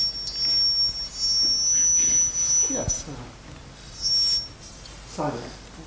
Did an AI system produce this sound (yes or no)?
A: no